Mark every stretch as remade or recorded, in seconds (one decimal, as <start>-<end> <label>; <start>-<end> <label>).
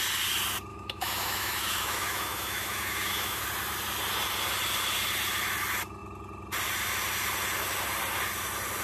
0.0-0.7 recorded; 0.7-3.4 remade; 3.4-8.8 recorded